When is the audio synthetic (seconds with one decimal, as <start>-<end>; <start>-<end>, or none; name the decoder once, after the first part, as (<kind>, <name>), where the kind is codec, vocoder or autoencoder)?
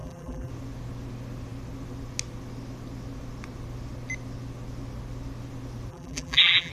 0.0-0.5 (vocoder, BigVGAN v2); 5.9-6.7